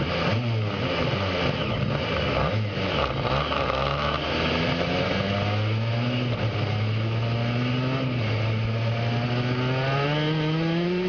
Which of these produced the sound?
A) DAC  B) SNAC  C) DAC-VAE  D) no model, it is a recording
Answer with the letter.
D